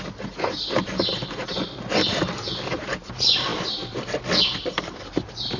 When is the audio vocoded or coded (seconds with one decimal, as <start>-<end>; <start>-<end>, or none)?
0.0-5.6